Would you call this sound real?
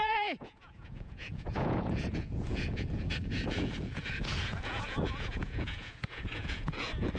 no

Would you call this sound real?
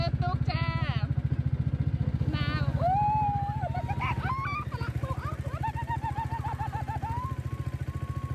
yes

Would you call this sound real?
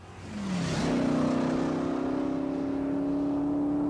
yes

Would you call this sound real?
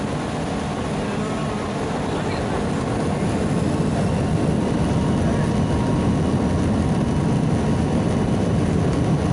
yes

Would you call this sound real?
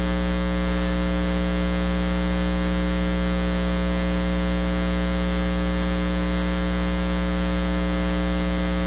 yes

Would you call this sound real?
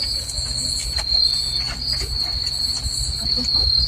yes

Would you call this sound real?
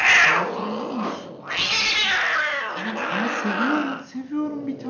yes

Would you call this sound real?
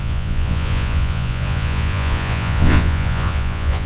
no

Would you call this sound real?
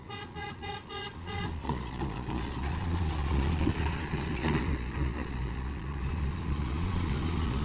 no